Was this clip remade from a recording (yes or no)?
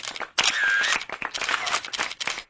no